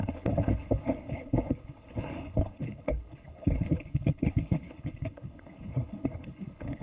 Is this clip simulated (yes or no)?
yes